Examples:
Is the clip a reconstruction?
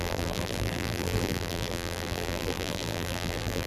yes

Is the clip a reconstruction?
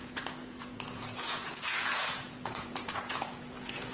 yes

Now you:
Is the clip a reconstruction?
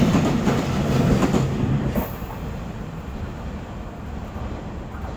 no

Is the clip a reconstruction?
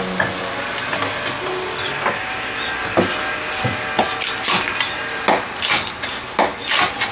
no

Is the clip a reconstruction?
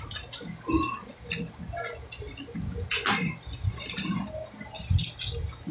no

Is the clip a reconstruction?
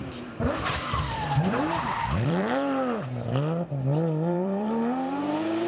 yes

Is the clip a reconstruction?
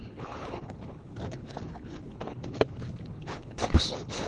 yes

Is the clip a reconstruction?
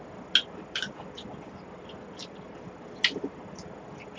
no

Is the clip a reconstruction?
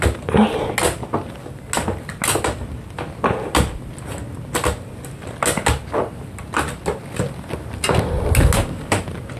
no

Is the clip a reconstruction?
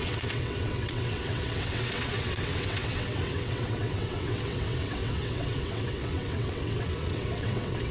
yes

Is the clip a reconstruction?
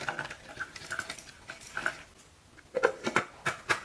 no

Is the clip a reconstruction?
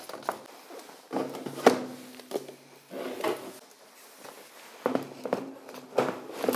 no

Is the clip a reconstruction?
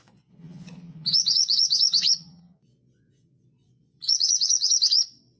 yes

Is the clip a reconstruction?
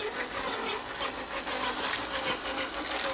no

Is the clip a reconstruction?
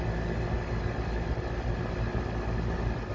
no